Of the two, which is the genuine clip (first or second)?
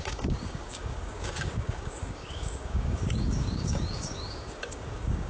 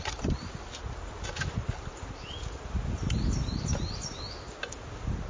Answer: second